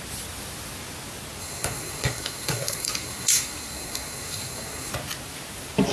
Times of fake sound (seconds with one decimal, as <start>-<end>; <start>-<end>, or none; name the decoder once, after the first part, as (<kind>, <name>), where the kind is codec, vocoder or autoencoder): 1.4-4.9 (codec, SNAC)